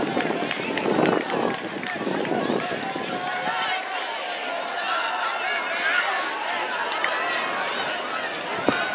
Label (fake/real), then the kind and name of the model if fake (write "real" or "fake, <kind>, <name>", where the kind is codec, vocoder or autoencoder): real